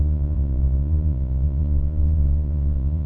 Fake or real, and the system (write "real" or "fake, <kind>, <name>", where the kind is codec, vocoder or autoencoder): fake, vocoder, Vocos